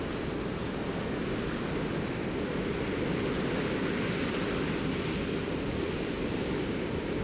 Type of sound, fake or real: real